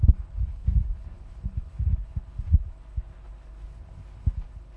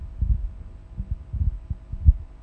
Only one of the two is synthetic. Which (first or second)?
first